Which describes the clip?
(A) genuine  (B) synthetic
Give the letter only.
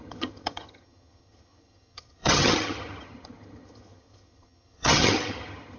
B